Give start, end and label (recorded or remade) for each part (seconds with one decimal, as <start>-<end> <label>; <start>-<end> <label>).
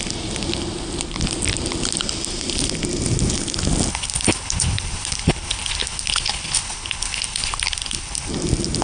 0.0-3.9 recorded; 3.9-8.3 remade; 8.3-8.8 recorded